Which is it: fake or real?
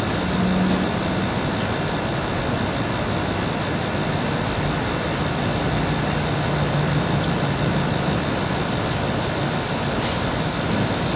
real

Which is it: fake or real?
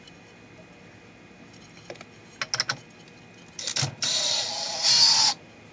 real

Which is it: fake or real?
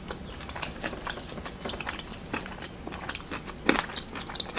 real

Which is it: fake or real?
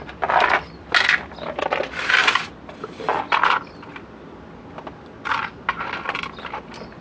real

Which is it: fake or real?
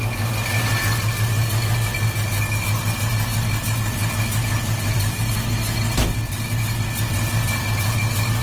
real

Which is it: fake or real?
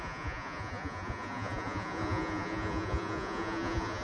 fake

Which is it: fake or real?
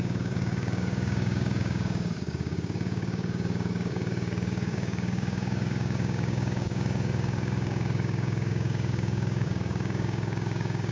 fake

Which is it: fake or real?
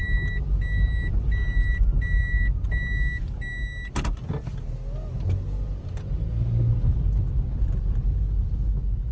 real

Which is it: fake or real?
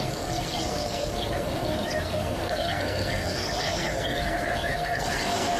fake